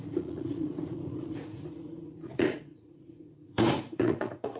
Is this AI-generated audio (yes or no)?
yes